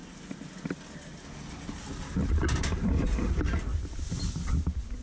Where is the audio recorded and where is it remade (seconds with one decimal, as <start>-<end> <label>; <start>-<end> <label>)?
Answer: 0.0-5.0 recorded